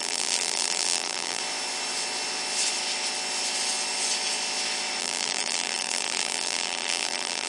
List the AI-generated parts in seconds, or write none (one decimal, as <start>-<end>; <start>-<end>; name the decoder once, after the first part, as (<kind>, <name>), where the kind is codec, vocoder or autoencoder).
0.0-1.4 (vocoder, BigVGAN v2); 5.0-7.5